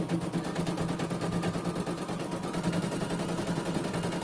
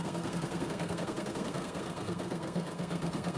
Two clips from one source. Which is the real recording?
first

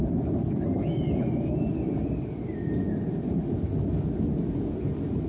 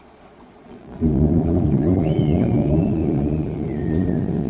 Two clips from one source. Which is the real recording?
first